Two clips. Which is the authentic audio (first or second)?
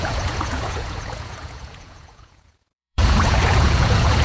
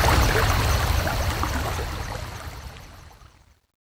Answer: second